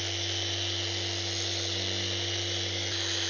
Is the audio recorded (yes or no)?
yes